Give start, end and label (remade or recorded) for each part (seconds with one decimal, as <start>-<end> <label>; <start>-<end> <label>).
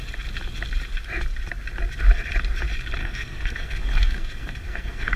0.0-3.0 recorded; 3.0-5.2 remade